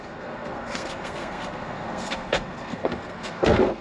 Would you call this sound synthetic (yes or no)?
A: yes